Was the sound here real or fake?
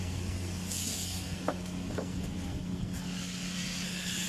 fake